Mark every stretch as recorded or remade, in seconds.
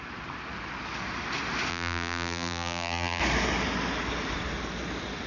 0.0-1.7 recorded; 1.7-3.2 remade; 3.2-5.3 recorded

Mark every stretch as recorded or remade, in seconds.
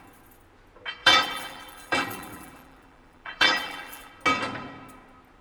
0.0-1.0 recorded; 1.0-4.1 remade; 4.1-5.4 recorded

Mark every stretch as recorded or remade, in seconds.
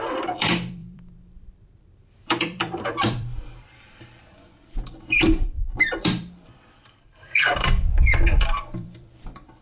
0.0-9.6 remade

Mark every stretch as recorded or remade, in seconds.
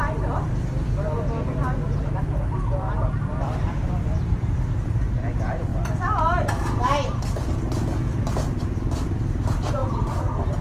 0.0-9.8 recorded; 9.8-10.6 remade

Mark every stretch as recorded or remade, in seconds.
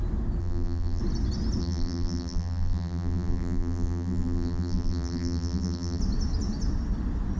0.0-0.4 recorded; 0.4-1.0 remade; 1.0-1.6 recorded; 1.6-6.0 remade; 6.0-7.4 recorded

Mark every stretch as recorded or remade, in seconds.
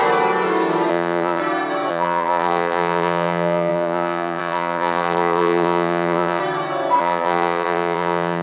0.0-0.9 recorded; 0.9-1.4 remade; 1.4-1.9 recorded; 1.9-6.4 remade; 6.4-7.0 recorded; 7.0-8.4 remade